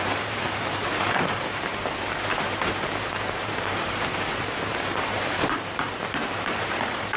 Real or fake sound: fake